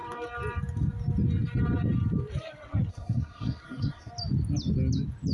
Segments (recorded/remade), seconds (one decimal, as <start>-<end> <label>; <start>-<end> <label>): 0.0-2.9 recorded; 2.9-4.1 remade; 4.1-5.3 recorded

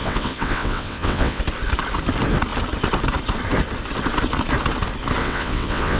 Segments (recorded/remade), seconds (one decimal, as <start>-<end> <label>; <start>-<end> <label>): 0.0-1.4 remade; 1.4-5.2 recorded; 5.2-6.0 remade

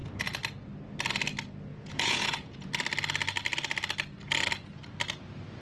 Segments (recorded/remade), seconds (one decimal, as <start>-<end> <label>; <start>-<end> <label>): 0.0-1.7 recorded; 1.7-2.7 remade; 2.7-5.6 recorded

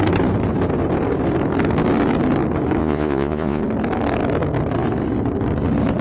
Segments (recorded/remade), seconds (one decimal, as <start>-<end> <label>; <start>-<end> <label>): 0.0-2.8 recorded; 2.8-3.6 remade; 3.6-6.0 recorded

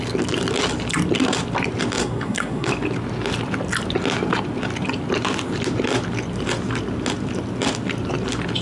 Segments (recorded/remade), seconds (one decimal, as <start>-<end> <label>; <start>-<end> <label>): 0.0-2.0 recorded; 2.0-2.7 remade; 2.7-8.6 recorded

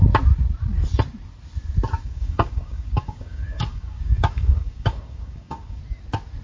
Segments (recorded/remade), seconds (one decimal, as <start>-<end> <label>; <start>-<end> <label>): 0.0-2.0 recorded; 2.0-5.8 remade; 5.8-6.4 recorded

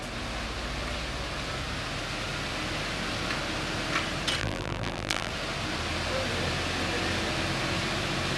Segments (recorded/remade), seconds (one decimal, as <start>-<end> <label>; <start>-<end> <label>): 0.0-4.4 recorded; 4.4-5.3 remade; 5.3-8.4 recorded

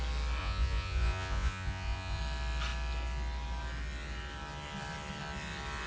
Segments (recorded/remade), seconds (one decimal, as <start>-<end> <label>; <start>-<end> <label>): 0.0-0.4 recorded; 0.4-2.2 remade; 2.2-5.9 recorded